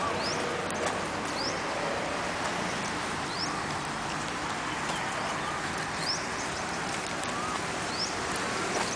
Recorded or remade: recorded